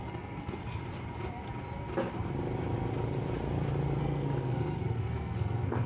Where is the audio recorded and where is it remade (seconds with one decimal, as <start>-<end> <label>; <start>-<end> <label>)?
0.0-0.6 remade; 0.6-4.0 recorded; 4.0-5.9 remade